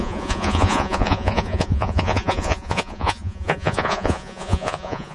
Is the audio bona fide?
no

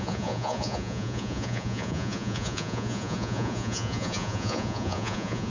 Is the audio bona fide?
no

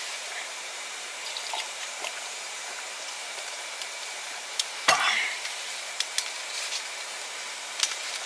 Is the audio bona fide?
no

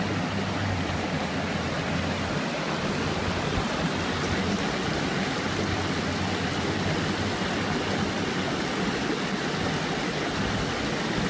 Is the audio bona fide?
yes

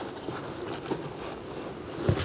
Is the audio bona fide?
yes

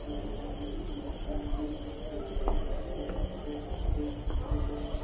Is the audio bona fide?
yes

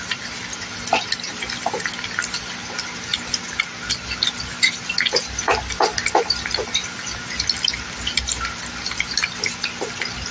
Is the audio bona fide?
yes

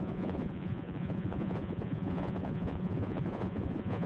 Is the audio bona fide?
no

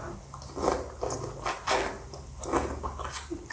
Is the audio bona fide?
yes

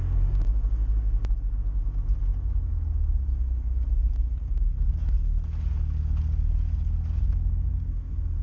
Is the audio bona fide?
yes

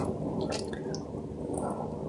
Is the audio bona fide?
yes